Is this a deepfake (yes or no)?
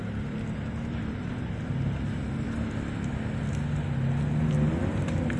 no